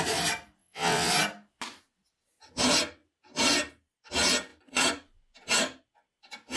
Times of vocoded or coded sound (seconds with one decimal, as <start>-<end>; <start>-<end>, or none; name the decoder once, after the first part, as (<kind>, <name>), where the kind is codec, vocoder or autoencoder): 0.6-1.1 (vocoder, WaveNeXt)

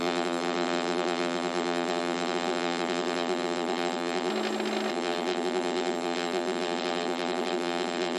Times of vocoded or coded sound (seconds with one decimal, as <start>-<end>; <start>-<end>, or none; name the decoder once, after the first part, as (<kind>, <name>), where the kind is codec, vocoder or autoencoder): 0.0-4.3 (vocoder, BigVGAN v2); 4.9-8.2

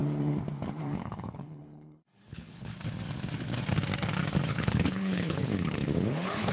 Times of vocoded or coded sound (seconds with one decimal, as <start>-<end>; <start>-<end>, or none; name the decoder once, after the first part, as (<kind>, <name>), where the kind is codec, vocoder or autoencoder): 0.8-2.7 (codec, HILCodec); 4.5-6.5

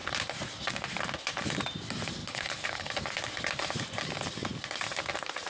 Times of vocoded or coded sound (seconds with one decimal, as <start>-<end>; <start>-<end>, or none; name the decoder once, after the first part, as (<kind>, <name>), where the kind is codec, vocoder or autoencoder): 2.2-2.9 (codec, HILCodec)

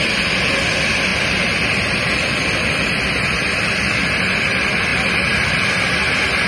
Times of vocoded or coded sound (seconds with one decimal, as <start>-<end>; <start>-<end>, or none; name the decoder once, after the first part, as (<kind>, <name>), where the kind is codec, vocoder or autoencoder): 1.1-3.6 (vocoder, BigVGAN v2)

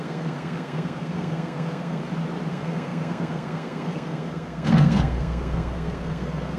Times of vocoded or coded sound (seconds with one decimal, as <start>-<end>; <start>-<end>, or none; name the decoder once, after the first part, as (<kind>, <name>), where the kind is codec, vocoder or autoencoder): 0.0-2.0 (codec, SNAC); 2.5-6.6

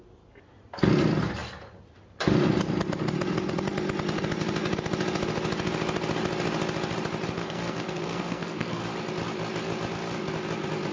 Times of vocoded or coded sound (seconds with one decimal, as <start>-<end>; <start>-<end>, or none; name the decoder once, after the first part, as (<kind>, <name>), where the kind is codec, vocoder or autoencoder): 7.4-8.8 (codec, SNAC)

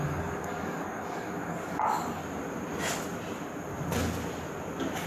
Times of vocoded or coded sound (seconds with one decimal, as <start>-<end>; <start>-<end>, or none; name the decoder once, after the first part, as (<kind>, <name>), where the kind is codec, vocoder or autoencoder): 0.0-2.2 (codec, DAC)